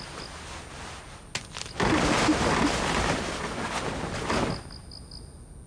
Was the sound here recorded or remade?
recorded